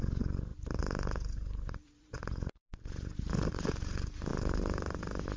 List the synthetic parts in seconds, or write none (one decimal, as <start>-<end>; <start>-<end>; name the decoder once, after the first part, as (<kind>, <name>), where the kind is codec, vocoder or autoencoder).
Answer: 0.5-3.5 (vocoder, BigVGAN v2); 4.3-5.4